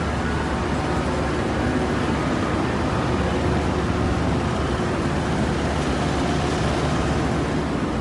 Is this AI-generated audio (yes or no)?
no